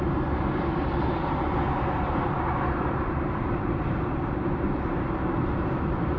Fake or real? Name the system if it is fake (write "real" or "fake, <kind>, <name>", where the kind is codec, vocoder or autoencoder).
fake, vocoder, BigVGAN v2